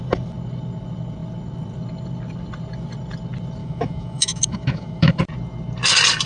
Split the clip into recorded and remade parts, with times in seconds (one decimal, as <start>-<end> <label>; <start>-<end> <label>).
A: 0.0-3.6 recorded; 3.6-5.2 remade; 5.2-6.3 recorded